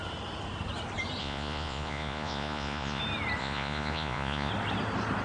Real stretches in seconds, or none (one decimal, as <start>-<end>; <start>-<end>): 0.0-1.2; 3.0-3.4; 4.5-5.2